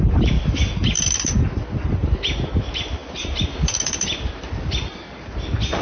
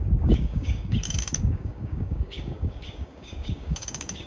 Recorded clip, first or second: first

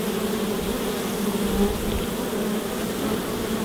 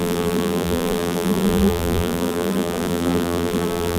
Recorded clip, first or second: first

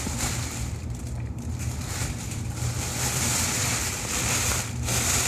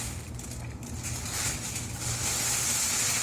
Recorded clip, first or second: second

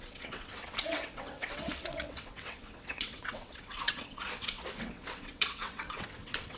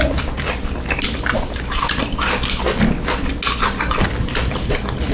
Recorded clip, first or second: second